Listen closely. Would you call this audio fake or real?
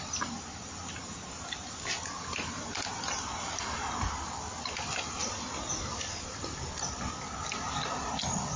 real